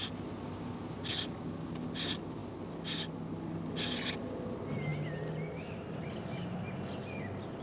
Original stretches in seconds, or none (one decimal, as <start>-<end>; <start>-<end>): 0.0-7.6